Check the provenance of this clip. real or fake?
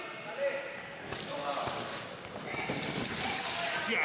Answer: real